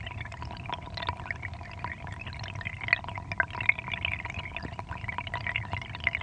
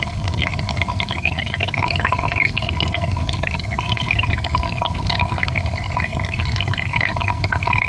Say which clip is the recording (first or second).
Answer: first